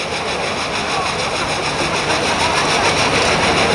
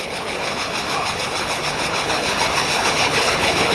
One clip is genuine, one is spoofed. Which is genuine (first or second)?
first